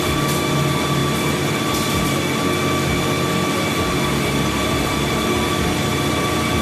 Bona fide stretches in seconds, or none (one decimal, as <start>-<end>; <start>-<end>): 0.0-6.6